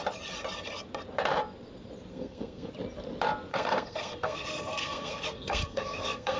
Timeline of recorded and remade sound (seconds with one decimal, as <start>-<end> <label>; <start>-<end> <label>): 0.0-2.1 recorded; 2.1-2.7 remade; 2.7-3.5 recorded; 3.5-6.4 remade